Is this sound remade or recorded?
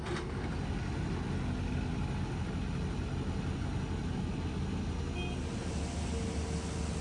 recorded